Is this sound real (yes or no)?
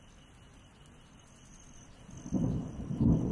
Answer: yes